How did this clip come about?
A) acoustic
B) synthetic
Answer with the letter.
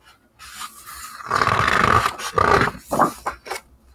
A